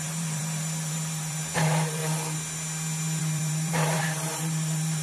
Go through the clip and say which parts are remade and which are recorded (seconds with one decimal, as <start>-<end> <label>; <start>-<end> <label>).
0.0-2.0 remade; 2.0-3.2 recorded; 3.2-5.0 remade